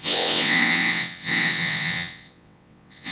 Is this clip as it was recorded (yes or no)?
no